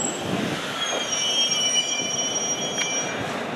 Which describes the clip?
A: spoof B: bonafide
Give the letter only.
B